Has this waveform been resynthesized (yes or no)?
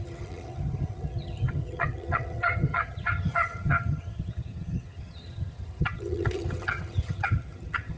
yes